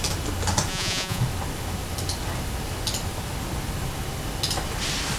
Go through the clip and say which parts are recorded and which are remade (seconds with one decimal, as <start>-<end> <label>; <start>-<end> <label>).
0.0-0.7 recorded; 0.7-1.2 remade; 1.2-5.2 recorded